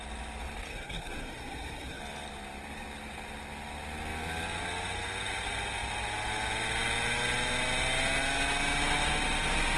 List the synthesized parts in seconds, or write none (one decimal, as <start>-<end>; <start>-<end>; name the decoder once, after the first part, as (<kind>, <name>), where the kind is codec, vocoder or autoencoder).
0.7-2.0 (codec, SNAC)